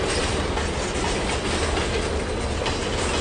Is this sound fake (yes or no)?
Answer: no